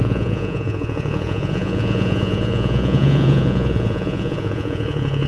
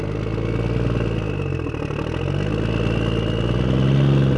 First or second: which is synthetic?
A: first